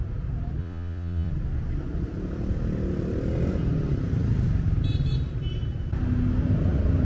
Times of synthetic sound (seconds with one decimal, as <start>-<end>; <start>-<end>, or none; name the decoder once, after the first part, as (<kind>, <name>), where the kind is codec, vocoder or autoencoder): 0.6-1.3 (vocoder, Vocos)